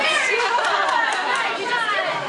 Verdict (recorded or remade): remade